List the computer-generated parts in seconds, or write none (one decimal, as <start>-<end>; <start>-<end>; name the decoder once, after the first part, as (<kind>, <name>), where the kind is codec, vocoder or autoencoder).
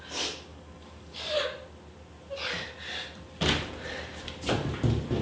0.5-1.3 (codec, DAC)